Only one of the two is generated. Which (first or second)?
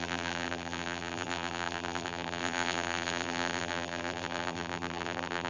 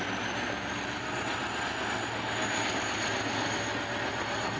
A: first